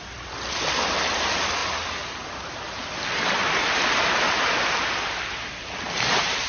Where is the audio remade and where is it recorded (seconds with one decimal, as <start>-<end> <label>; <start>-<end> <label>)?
0.0-6.5 recorded